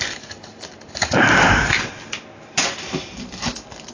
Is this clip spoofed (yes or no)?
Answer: no